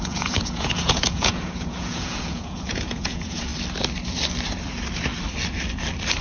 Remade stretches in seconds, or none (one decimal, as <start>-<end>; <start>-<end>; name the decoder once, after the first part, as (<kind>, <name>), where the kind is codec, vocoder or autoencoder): 0.0-3.5 (vocoder, Vocos)